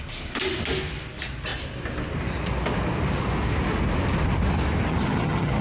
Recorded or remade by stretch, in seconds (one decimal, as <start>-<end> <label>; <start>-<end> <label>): 0.0-4.9 recorded; 4.9-5.6 remade